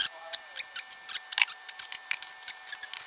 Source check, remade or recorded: recorded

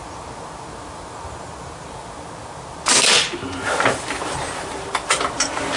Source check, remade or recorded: recorded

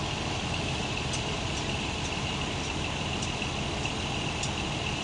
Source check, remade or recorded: recorded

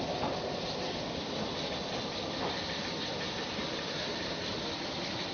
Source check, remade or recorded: recorded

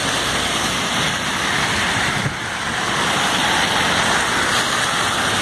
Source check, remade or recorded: recorded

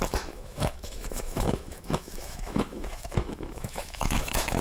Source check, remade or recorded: remade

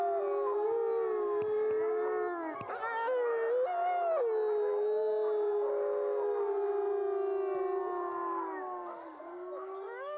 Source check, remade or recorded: recorded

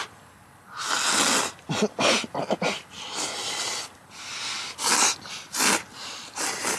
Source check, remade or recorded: recorded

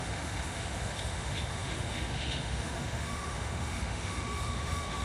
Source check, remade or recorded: remade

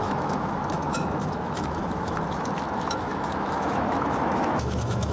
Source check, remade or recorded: remade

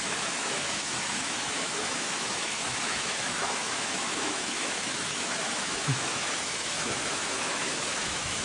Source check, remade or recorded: remade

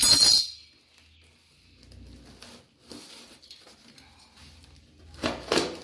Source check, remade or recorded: recorded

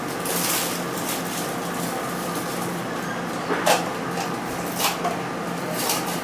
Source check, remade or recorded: recorded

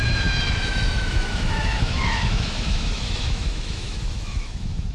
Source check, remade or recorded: remade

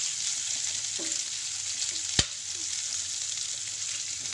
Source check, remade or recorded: recorded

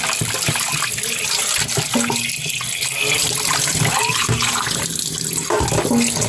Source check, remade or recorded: recorded